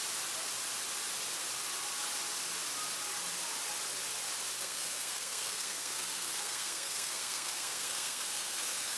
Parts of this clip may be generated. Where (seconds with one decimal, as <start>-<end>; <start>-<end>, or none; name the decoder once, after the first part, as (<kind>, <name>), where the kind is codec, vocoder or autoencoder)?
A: 4.6-9.0 (codec, SNAC)